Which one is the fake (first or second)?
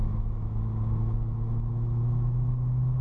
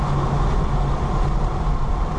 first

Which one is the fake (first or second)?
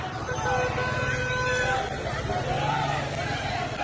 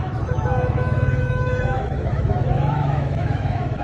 second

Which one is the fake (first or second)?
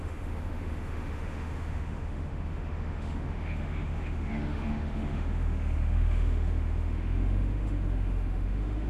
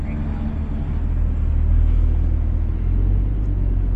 first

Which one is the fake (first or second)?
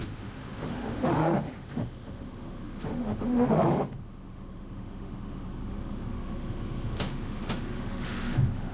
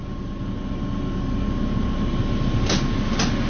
first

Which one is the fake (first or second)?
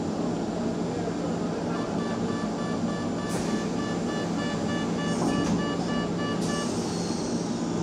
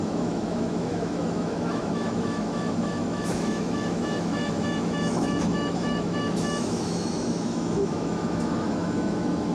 second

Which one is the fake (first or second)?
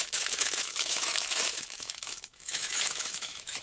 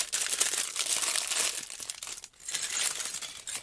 first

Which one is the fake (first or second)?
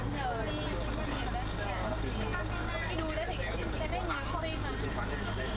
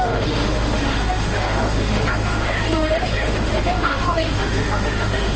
second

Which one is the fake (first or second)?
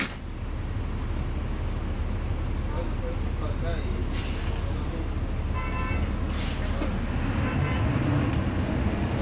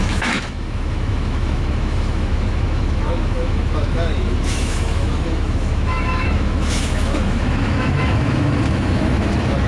second